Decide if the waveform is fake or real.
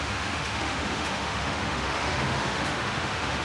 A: fake